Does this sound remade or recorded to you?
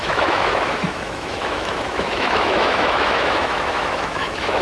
remade